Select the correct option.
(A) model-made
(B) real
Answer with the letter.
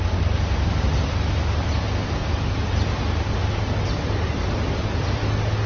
B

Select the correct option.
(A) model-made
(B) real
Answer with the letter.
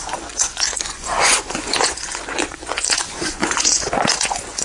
A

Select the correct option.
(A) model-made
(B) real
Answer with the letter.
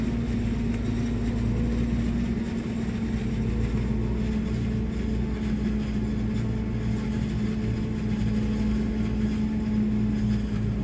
B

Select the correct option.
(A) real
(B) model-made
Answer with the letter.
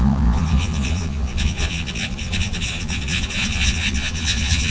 B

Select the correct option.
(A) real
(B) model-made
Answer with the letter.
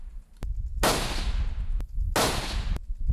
A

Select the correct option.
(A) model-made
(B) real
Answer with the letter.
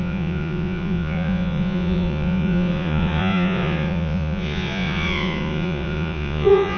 A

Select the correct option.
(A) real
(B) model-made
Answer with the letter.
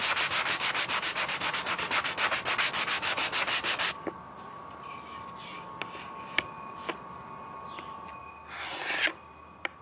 A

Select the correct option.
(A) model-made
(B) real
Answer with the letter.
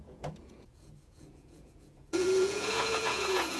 A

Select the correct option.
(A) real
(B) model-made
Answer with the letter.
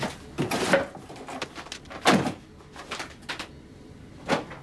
A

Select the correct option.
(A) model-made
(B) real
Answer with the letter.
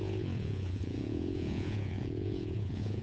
A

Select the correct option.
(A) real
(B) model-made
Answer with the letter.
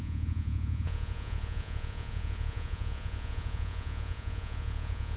B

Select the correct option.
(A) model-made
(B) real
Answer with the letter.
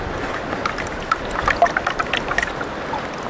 B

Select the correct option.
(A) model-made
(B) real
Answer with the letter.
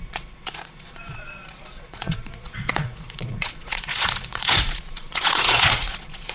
A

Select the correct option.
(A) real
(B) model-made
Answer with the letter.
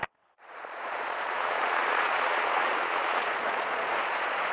B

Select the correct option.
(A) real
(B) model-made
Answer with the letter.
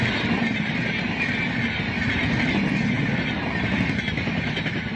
A